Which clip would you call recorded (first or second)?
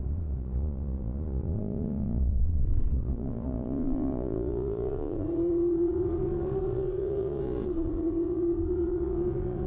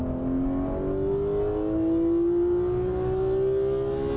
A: second